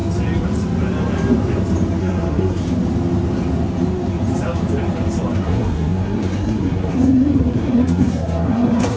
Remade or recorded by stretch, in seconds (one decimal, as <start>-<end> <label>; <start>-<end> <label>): 0.0-2.0 recorded; 2.0-2.6 remade; 2.6-5.4 recorded; 5.4-9.0 remade